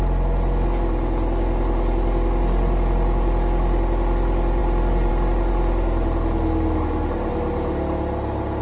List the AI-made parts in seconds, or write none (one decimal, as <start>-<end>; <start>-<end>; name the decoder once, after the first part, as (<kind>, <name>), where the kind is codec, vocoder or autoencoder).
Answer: none